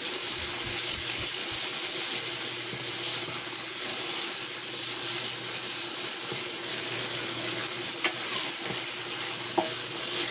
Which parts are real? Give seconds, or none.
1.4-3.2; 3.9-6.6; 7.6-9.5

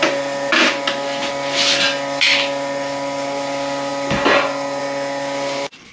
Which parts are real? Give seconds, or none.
0.0-5.9

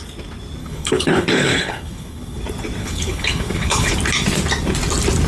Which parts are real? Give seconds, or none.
0.0-0.6; 2.4-2.8; 3.9-5.3

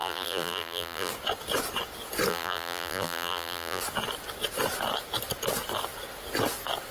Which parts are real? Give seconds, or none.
1.1-2.3; 3.8-6.9

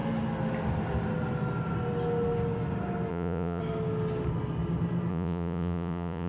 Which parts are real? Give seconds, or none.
0.0-3.1; 3.6-5.1

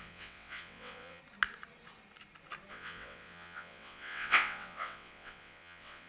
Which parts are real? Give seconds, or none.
1.2-2.7

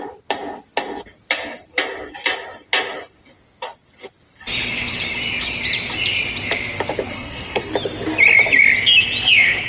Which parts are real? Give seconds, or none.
0.0-7.1; 7.7-9.7

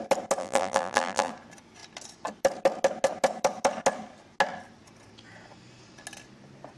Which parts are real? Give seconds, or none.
0.0-0.4; 1.3-6.8